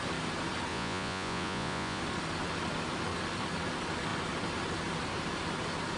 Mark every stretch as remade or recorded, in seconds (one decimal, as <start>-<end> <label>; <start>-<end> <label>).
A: 0.0-0.7 recorded; 0.7-2.0 remade; 2.0-6.0 recorded